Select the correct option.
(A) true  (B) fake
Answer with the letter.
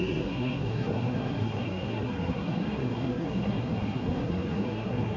B